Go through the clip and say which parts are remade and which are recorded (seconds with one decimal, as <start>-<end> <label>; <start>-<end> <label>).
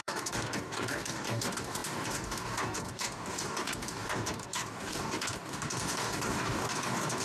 0.0-7.2 remade